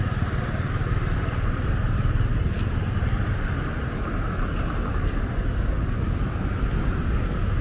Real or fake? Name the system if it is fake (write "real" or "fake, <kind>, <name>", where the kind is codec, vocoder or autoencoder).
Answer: real